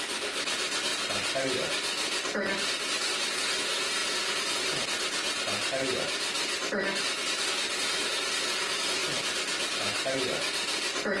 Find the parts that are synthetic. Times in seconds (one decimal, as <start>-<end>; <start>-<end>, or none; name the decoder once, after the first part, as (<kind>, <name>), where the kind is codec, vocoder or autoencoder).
0.9-3.3 (vocoder, BigVGAN v2); 9.0-9.8